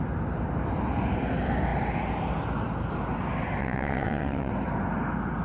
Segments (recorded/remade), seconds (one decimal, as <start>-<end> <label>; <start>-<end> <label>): 0.0-3.6 recorded; 3.6-4.5 remade; 4.5-5.4 recorded